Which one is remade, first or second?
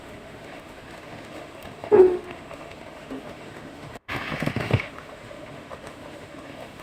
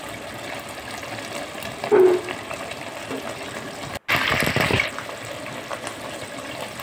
first